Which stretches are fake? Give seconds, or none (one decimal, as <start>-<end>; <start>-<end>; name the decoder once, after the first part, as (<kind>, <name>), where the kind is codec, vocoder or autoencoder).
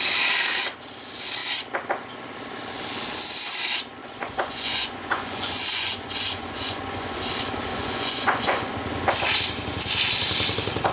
4.0-7.2 (vocoder, Vocos); 7.7-8.7